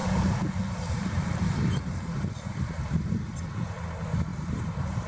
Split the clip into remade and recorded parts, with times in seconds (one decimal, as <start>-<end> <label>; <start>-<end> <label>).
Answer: 0.0-3.1 remade; 3.1-4.3 recorded; 4.3-5.1 remade